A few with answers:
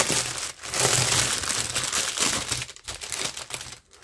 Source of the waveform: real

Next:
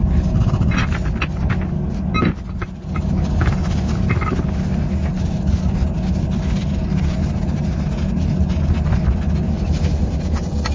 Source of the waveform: real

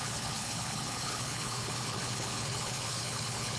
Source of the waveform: fake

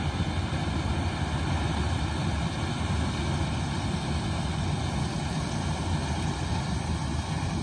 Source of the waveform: real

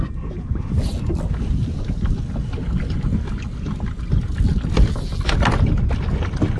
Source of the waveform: real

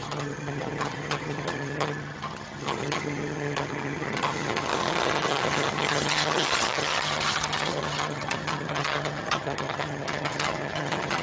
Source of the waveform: fake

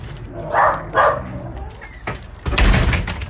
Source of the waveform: real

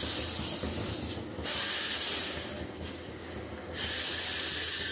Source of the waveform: real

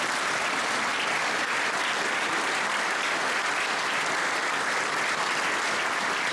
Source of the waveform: real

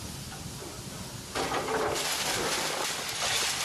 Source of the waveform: real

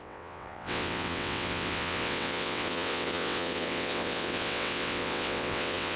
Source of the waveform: fake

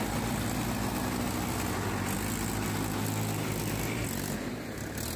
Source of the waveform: real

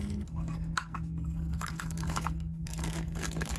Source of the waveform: fake